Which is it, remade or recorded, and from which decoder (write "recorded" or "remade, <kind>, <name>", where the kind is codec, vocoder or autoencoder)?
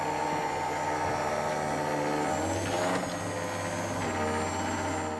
recorded